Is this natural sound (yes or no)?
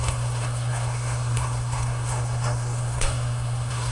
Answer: no